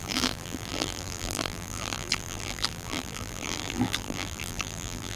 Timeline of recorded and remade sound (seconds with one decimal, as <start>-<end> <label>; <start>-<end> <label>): 0.0-5.2 remade